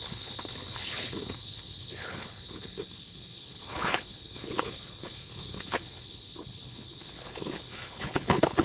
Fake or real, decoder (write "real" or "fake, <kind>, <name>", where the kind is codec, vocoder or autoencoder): fake, codec, HILCodec